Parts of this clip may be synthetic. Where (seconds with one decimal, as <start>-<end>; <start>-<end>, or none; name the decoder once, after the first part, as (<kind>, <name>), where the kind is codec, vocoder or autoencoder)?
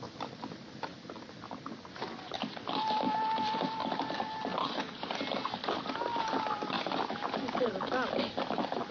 4.6-5.1 (codec, HILCodec)